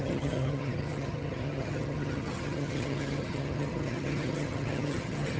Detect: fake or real fake